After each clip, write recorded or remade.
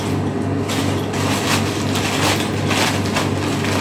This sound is recorded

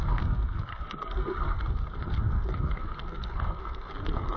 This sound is remade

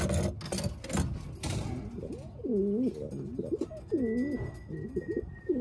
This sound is recorded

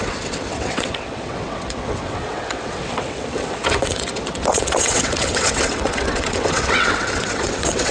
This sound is remade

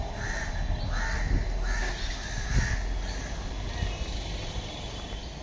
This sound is recorded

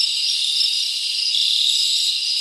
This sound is recorded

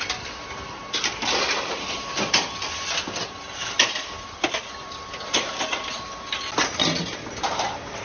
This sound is recorded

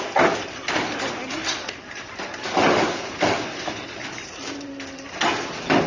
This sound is recorded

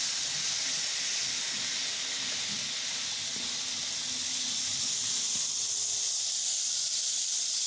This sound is recorded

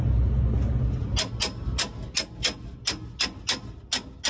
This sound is recorded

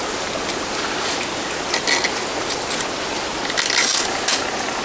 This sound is recorded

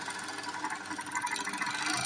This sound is recorded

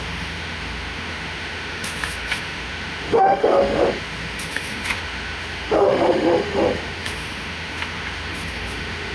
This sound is remade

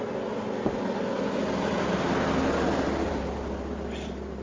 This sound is recorded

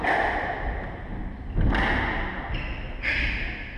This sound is recorded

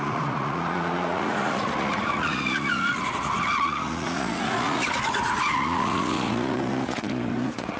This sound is remade